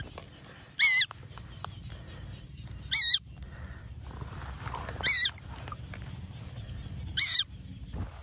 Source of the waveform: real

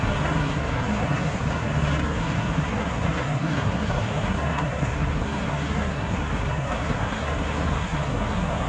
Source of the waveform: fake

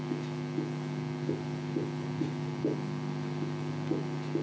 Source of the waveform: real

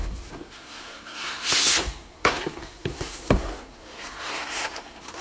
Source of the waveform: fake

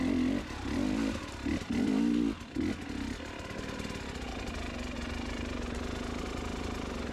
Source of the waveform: real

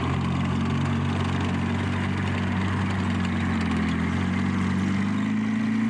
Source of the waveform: real